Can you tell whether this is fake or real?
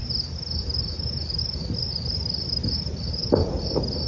real